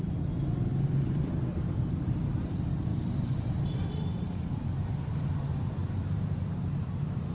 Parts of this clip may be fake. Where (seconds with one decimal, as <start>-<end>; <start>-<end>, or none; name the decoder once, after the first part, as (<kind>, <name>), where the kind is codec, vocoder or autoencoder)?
0.0-2.9 (vocoder, BigVGAN v2); 3.6-7.3